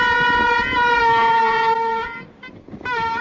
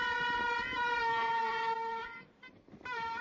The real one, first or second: first